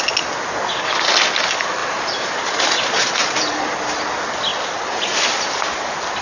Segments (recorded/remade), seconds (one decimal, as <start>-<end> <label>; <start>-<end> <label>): 0.0-1.8 recorded; 1.8-3.5 remade; 3.5-6.2 recorded

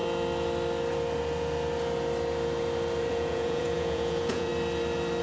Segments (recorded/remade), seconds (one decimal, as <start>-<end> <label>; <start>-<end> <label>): 0.0-3.1 recorded; 3.1-4.5 remade; 4.5-5.2 recorded

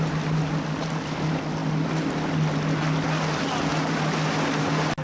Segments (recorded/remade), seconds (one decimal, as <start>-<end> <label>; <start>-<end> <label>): 0.0-5.0 recorded

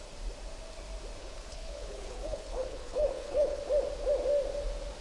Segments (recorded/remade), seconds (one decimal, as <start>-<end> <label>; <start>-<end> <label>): 0.0-1.2 recorded; 1.2-3.6 remade; 3.6-5.0 recorded

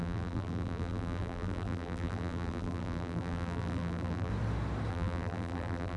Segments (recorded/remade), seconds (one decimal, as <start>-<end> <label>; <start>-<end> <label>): 0.0-4.3 remade; 4.3-4.9 recorded; 4.9-6.0 remade

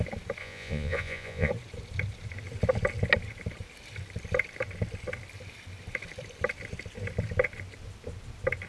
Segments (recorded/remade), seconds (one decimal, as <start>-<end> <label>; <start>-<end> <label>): 0.0-0.4 recorded; 0.4-1.5 remade; 1.5-8.7 recorded